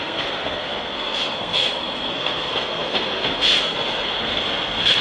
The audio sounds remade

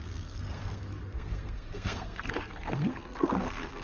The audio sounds remade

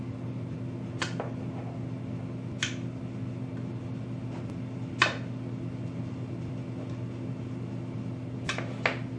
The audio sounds recorded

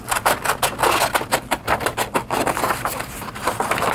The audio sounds recorded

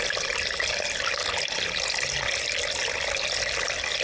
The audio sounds recorded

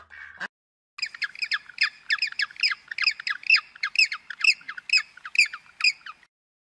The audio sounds recorded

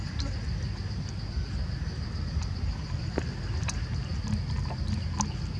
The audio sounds recorded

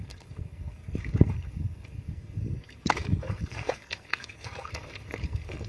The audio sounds remade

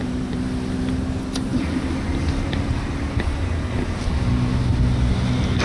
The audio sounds recorded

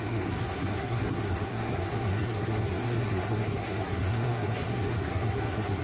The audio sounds remade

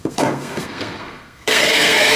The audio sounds remade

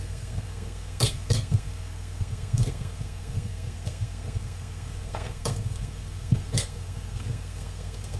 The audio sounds remade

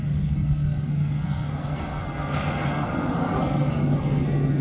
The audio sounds remade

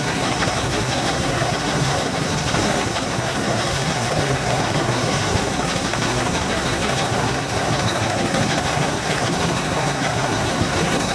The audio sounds remade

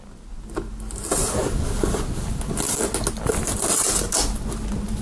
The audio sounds recorded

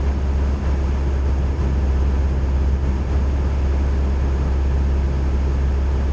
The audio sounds recorded